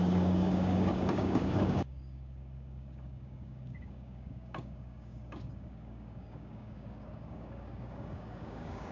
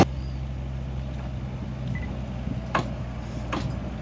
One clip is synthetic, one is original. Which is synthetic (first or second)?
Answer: first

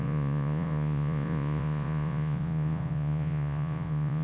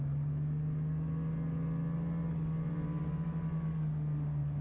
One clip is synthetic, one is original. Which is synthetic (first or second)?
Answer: first